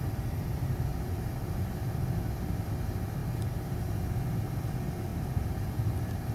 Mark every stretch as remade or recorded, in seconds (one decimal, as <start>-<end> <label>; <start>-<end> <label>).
0.0-0.9 recorded; 0.9-1.5 remade; 1.5-3.2 recorded; 3.2-3.9 remade; 3.9-5.1 recorded; 5.1-6.3 remade